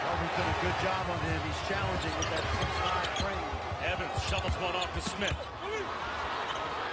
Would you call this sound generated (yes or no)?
no